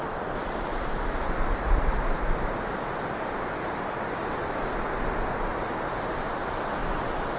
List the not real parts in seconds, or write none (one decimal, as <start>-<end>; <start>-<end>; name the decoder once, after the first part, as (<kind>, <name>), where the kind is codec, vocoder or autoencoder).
none